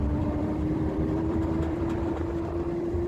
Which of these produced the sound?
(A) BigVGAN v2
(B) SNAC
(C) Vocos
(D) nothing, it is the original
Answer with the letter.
A